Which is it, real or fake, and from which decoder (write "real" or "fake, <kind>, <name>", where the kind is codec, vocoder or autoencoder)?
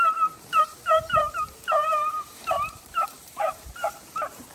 fake, vocoder, BigVGAN v2